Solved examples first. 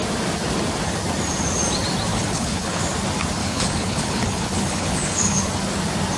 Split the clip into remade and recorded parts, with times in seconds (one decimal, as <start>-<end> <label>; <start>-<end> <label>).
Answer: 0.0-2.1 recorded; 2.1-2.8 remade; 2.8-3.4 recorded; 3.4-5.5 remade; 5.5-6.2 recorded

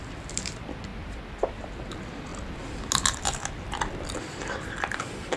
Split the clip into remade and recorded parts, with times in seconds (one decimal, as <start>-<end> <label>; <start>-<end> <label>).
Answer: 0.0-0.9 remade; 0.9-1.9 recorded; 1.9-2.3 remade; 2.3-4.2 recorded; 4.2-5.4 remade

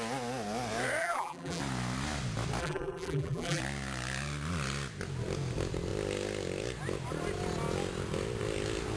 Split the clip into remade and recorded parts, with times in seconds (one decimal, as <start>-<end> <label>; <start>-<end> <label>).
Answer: 0.0-1.0 recorded; 1.0-1.6 remade; 1.6-2.6 recorded; 2.6-3.6 remade; 3.6-9.0 recorded

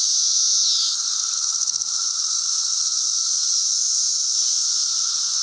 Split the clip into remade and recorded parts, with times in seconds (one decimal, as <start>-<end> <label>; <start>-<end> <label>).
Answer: 0.0-0.4 remade; 0.4-1.4 recorded; 1.4-5.4 remade

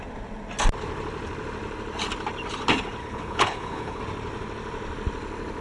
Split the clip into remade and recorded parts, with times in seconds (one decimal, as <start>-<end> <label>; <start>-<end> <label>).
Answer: 0.0-3.0 recorded; 3.0-4.0 remade; 4.0-5.6 recorded

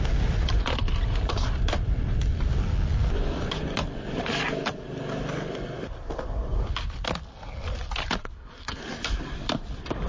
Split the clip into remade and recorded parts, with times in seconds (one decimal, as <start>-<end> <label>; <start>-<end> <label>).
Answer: 0.0-8.2 recorded; 8.2-8.8 remade; 8.8-10.1 recorded

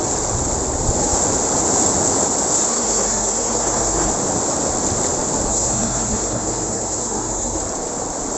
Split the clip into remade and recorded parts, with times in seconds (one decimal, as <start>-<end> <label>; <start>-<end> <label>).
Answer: 0.0-2.7 recorded; 2.7-4.1 remade; 4.1-5.5 recorded; 5.5-7.6 remade; 7.6-8.4 recorded

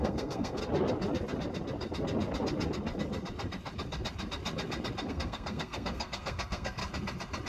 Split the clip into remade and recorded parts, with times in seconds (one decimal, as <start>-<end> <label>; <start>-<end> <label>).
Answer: 0.0-0.6 remade; 0.6-5.1 recorded; 5.1-6.8 remade; 6.8-7.5 recorded